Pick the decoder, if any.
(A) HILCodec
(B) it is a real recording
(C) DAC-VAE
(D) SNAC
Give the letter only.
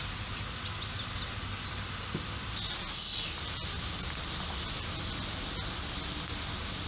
B